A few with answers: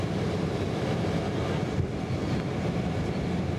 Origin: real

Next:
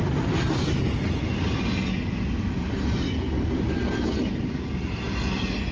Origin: real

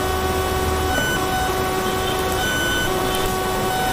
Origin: real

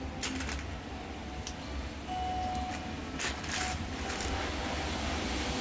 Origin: real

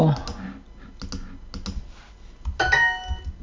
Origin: real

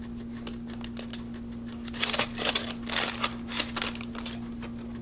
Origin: real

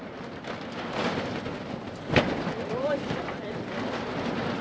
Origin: real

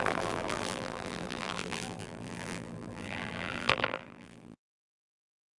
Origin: fake